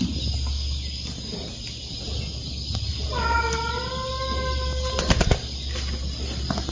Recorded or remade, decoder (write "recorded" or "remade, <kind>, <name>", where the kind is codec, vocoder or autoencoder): recorded